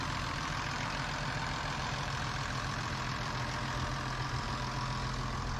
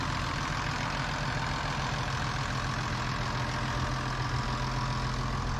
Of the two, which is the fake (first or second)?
first